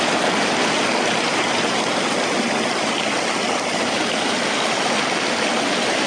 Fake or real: real